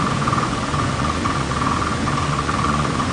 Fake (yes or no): yes